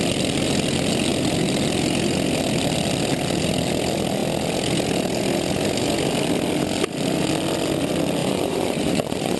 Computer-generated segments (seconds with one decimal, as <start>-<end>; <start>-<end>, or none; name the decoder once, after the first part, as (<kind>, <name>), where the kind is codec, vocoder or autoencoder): 8.2-9.4 (vocoder, Vocos)